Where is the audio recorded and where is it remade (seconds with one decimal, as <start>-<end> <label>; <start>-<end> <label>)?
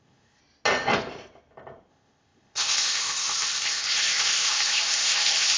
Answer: 0.0-0.4 remade; 0.4-1.9 recorded; 1.9-5.6 remade